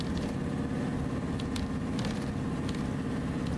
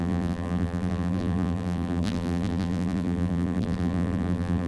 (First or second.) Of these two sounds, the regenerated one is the second